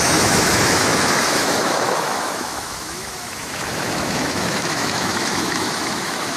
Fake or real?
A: fake